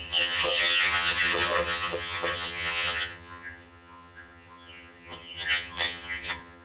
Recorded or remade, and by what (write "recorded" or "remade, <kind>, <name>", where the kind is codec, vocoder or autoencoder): remade, vocoder, HiFi-GAN